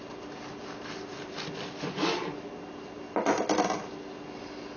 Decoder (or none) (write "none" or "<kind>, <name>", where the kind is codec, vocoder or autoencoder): none